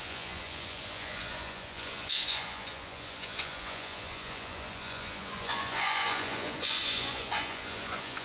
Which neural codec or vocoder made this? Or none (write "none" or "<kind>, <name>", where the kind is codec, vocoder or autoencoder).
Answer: vocoder, Vocos